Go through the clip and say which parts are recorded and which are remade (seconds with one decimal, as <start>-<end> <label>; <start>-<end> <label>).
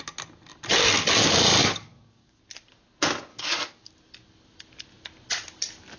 0.0-1.6 recorded; 1.6-2.4 remade; 2.4-3.3 recorded; 3.3-3.9 remade; 3.9-6.0 recorded